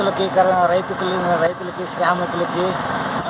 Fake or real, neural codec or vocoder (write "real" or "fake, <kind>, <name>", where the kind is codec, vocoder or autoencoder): fake, autoencoder, DAC-VAE